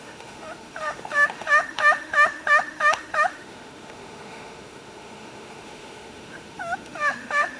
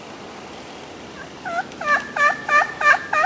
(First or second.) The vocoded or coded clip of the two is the first